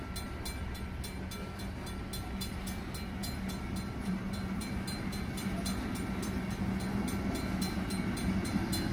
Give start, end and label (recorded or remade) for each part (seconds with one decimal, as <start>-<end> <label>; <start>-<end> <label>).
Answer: 0.0-8.9 recorded